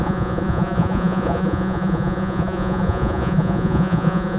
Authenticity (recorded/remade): remade